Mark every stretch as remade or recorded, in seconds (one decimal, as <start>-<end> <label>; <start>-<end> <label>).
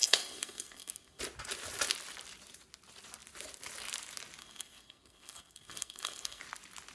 0.0-1.2 remade; 1.2-4.4 recorded; 4.4-6.4 remade; 6.4-6.9 recorded